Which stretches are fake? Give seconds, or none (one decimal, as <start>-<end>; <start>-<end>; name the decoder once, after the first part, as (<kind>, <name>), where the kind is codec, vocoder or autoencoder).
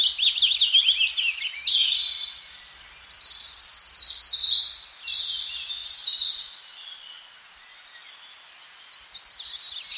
none